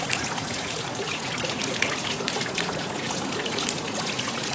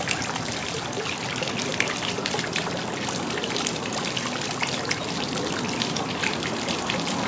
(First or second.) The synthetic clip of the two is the first